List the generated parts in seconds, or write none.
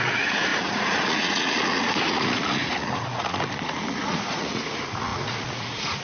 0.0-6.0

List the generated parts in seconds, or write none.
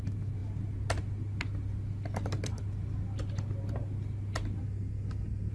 4.6-5.5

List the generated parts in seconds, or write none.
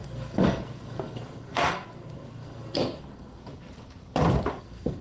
0.0-3.4; 4.6-5.0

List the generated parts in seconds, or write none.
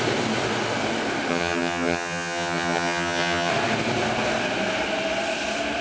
1.3-3.5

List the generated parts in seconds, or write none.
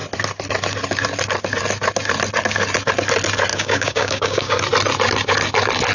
3.5-4.6